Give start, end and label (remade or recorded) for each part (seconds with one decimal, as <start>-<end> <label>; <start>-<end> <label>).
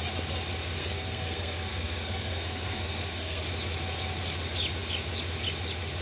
0.0-0.8 recorded; 0.8-3.4 remade; 3.4-6.0 recorded